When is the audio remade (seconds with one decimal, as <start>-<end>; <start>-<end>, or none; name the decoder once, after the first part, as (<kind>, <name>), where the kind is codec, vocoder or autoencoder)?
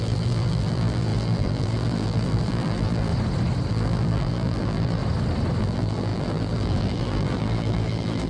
0.0-3.1 (vocoder, BigVGAN v2); 3.7-5.0; 5.6-8.3